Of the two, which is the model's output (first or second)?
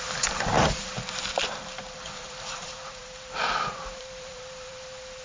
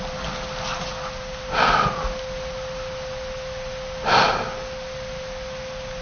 first